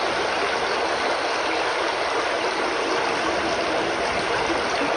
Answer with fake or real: real